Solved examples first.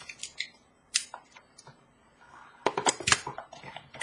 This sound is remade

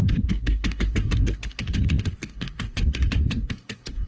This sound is remade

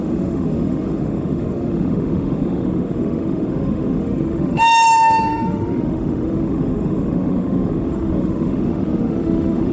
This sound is remade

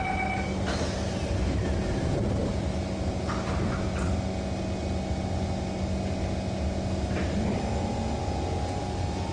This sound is recorded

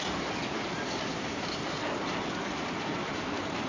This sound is remade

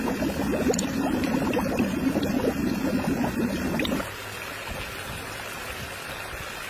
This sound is recorded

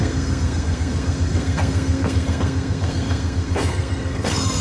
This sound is remade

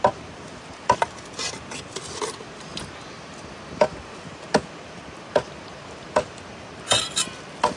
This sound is remade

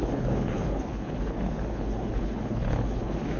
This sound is remade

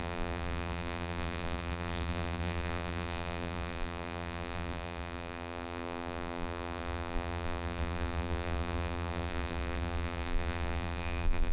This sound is remade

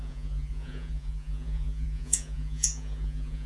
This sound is remade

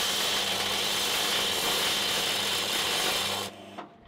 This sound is recorded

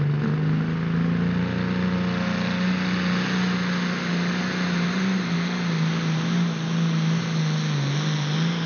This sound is recorded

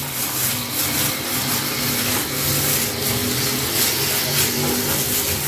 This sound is recorded